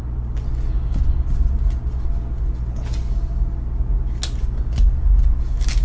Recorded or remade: recorded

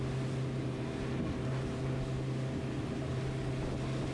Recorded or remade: recorded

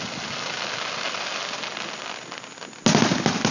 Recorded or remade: recorded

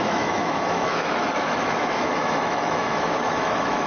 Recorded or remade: remade